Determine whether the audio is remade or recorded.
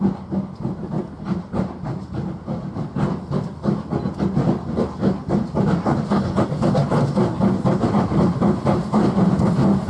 recorded